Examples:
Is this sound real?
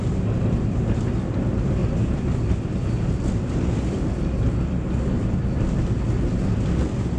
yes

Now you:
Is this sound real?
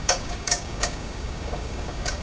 no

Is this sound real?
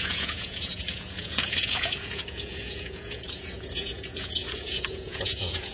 no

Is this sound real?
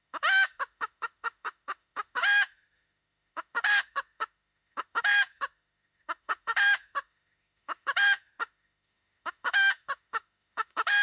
no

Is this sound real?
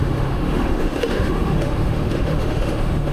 no